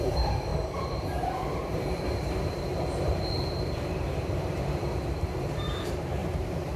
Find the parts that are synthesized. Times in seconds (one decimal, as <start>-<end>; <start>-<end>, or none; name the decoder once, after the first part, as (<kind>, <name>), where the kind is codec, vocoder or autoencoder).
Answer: 0.0-6.8 (vocoder, BigVGAN v2)